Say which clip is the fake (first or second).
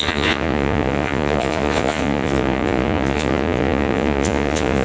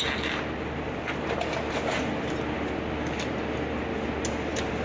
first